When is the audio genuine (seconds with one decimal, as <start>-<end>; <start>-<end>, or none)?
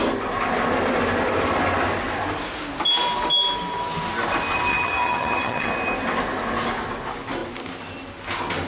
0.0-4.7; 5.7-8.7